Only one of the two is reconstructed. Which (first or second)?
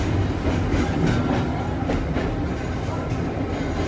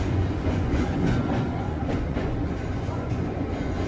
second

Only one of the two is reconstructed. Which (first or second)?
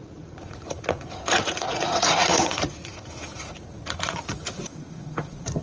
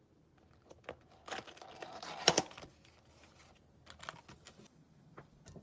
first